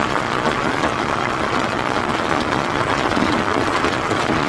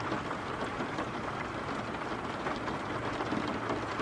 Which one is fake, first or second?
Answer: first